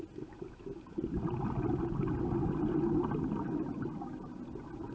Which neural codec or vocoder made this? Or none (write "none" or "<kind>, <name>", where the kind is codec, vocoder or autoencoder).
none